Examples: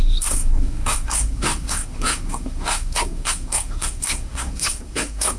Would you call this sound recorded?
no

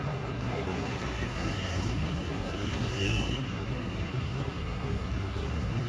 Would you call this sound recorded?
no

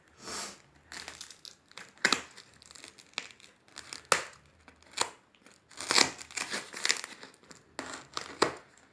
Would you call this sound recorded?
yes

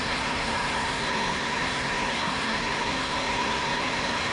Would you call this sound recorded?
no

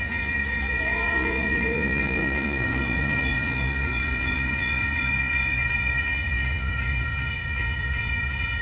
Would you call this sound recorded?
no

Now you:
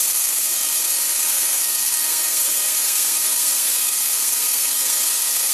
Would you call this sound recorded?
no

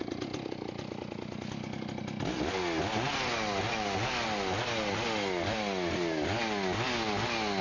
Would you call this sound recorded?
yes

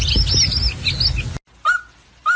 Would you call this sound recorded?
yes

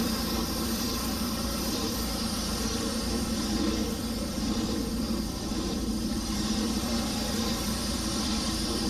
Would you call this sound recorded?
no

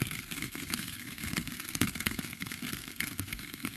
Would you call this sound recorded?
no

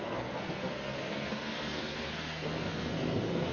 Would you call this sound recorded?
no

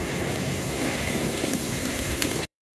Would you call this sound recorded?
no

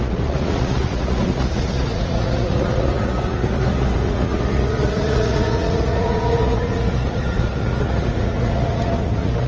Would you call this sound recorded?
no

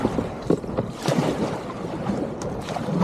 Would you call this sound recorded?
yes